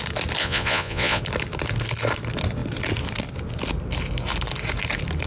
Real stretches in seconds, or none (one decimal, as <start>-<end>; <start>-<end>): 0.0-0.4; 1.2-5.3